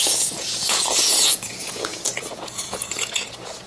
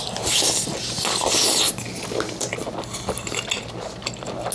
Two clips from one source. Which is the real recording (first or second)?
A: second